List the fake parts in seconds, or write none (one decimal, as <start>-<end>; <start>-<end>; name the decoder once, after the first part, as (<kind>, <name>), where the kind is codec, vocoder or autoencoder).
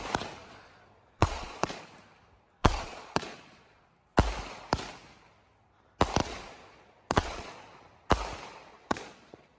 0.4-1.8 (vocoder, Vocos); 2.6-3.8; 6.2-7.5; 8.7-9.6